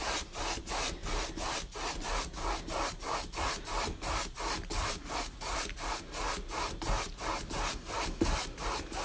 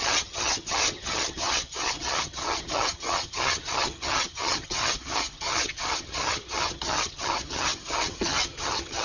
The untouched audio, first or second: first